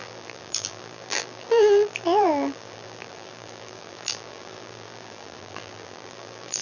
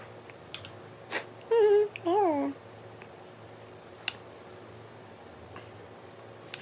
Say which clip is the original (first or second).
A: second